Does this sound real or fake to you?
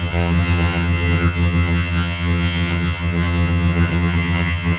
fake